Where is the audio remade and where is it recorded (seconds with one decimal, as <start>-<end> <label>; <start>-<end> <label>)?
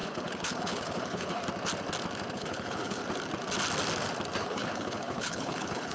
0.0-1.4 remade; 1.4-2.3 recorded; 2.3-3.0 remade; 3.0-4.4 recorded; 4.4-5.9 remade